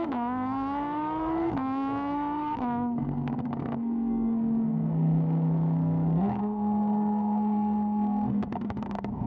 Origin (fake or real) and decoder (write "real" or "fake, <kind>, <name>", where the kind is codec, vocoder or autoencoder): fake, codec, SNAC